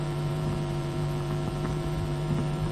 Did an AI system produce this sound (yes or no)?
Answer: yes